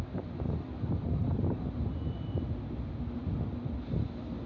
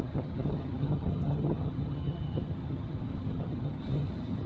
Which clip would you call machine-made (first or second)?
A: second